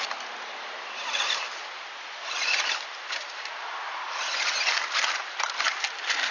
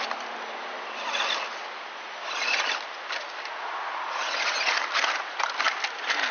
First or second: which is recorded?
second